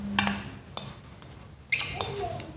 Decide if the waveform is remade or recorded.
recorded